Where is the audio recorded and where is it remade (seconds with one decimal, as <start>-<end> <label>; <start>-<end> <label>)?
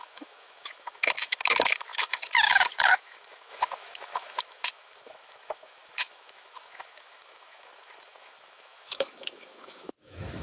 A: 0.0-10.4 remade